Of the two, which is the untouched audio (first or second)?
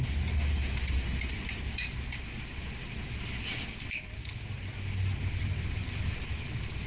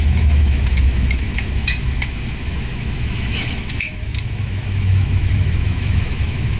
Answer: first